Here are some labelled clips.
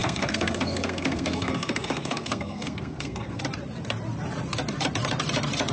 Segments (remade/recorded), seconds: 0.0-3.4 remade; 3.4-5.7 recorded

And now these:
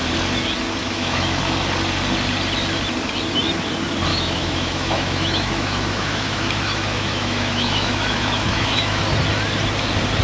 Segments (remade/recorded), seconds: 0.0-0.8 recorded; 0.8-1.4 remade; 1.4-4.1 recorded; 4.1-9.0 remade; 9.0-10.2 recorded

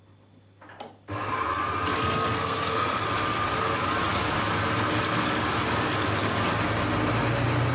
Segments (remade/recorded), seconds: 0.0-1.9 recorded; 1.9-3.0 remade; 3.0-7.7 recorded

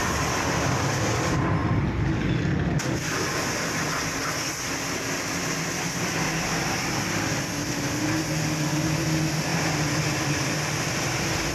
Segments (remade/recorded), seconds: 0.0-9.5 recorded; 9.5-11.5 remade

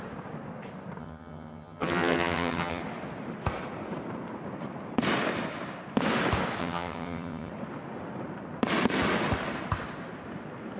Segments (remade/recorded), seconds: 0.0-1.0 recorded; 1.0-2.8 remade; 2.8-6.6 recorded; 6.6-7.5 remade; 7.5-10.8 recorded

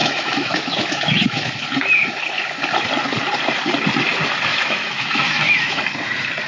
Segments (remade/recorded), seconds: 0.0-1.5 remade; 1.5-4.5 recorded; 4.5-5.8 remade; 5.8-6.5 recorded